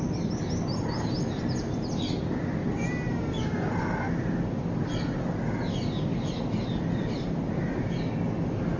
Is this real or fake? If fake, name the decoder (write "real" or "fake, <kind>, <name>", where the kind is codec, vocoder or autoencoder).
real